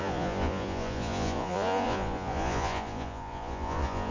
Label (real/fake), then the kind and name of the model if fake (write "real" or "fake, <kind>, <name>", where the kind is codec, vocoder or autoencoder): fake, vocoder, Vocos